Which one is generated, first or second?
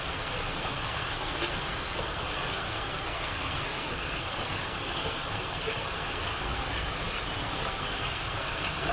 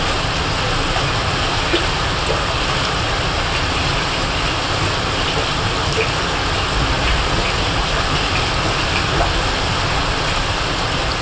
first